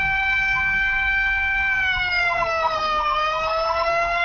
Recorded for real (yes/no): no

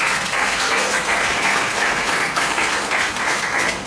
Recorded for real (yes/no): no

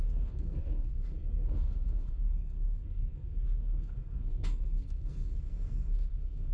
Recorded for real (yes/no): no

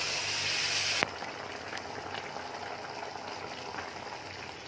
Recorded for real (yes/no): yes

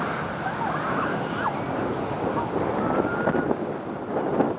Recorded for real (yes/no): yes